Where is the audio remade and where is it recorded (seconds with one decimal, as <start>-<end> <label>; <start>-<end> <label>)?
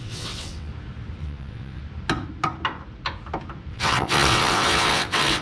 0.0-0.7 remade; 0.7-1.2 recorded; 1.2-1.8 remade; 1.8-3.7 recorded; 3.7-5.4 remade